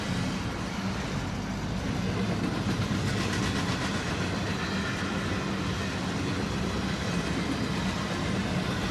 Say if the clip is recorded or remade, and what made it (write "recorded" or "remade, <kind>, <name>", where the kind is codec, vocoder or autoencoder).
recorded